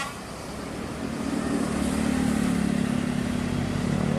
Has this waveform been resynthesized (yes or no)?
no